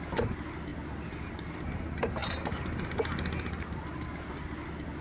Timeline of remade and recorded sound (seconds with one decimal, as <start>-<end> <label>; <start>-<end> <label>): 0.0-5.0 recorded